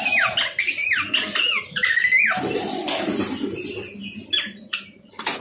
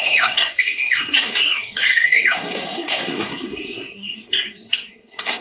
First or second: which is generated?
second